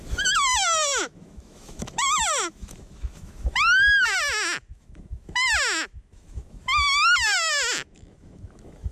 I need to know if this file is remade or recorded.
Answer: remade